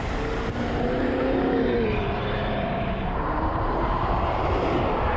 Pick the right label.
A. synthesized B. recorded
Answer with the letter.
A